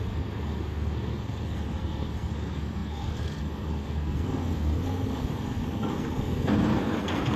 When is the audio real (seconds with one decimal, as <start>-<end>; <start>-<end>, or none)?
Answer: none